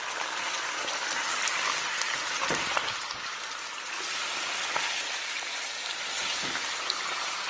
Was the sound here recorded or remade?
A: recorded